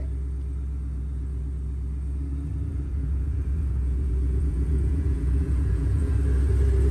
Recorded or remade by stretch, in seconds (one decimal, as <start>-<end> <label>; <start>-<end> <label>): 0.0-2.7 recorded; 2.7-6.1 remade; 6.1-6.9 recorded